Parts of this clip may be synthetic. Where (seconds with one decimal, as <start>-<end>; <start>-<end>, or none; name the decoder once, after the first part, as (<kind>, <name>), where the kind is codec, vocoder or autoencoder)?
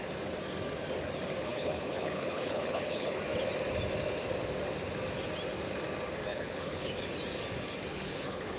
1.5-3.2 (codec, HILCodec); 6.3-6.9; 7.9-8.6